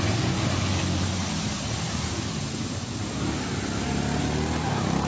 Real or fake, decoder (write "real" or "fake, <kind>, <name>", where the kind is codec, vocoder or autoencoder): real